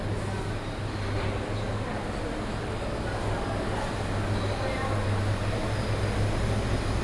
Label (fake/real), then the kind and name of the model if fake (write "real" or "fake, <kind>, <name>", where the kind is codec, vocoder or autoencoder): real